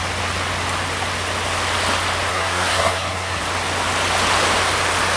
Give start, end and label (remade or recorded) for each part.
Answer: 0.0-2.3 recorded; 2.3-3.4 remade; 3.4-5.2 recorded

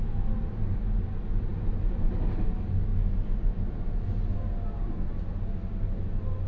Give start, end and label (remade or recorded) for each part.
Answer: 0.0-6.5 recorded

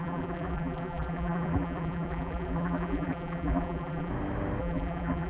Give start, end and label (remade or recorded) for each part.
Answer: 0.0-4.1 remade; 4.1-4.6 recorded; 4.6-5.3 remade

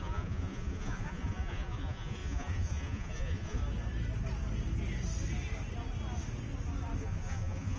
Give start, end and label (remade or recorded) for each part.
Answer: 0.0-3.6 remade; 3.6-7.0 recorded; 7.0-7.8 remade

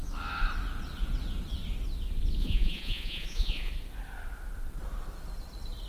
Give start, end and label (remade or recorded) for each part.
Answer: 0.0-2.4 recorded; 2.4-3.7 remade; 3.7-5.9 recorded

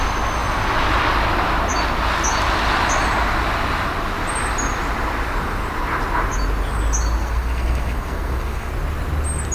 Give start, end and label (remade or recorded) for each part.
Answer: 0.0-7.2 recorded; 7.2-8.7 remade; 8.7-9.5 recorded